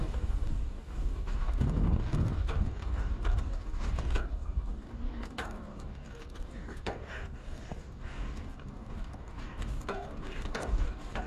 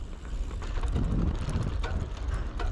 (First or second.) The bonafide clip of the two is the second